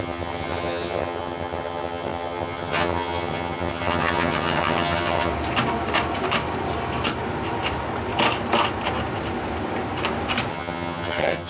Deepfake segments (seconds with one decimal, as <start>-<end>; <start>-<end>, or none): 0.0-5.3; 10.5-11.5